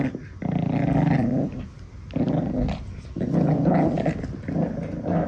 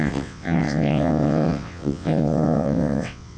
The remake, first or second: second